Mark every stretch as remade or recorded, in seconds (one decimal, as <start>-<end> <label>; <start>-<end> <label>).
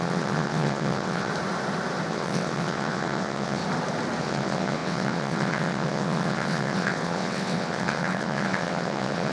0.0-1.3 remade; 1.3-2.1 recorded; 2.1-3.6 remade; 3.6-4.2 recorded; 4.2-9.3 remade